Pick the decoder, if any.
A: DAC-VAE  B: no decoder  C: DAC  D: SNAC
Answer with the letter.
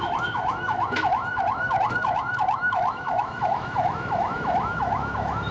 A